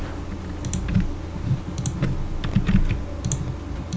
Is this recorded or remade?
recorded